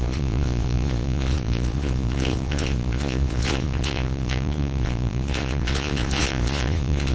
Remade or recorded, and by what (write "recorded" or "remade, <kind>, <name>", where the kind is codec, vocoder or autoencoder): remade, vocoder, Vocos